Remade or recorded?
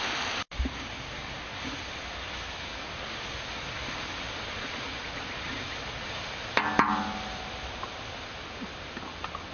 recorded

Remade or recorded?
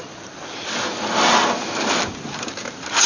remade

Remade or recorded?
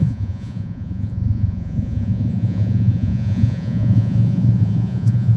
remade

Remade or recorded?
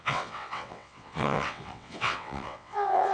remade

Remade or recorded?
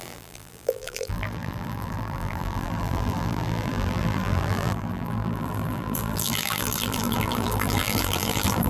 remade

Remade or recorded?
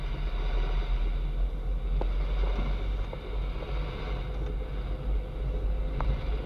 recorded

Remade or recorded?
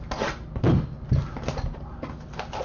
recorded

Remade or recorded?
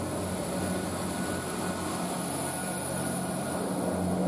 recorded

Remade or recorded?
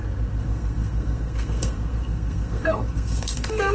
remade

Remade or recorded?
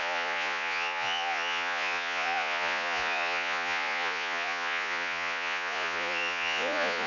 remade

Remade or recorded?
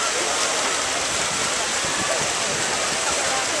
recorded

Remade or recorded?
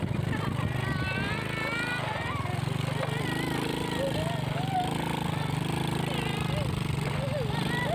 recorded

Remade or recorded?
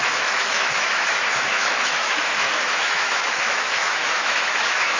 remade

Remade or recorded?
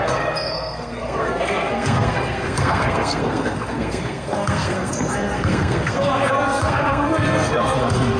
remade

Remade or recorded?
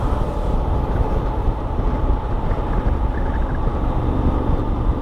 recorded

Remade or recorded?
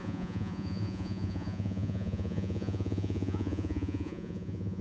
remade